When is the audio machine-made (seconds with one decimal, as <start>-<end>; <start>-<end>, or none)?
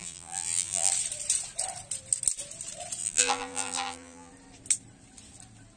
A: 0.0-0.9; 3.0-4.3